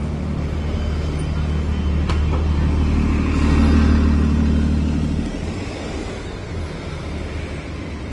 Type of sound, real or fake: real